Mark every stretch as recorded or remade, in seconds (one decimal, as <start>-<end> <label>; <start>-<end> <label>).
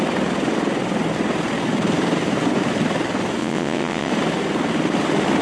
0.0-3.4 recorded; 3.4-4.1 remade; 4.1-5.4 recorded